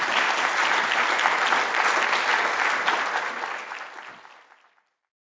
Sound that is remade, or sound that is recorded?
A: recorded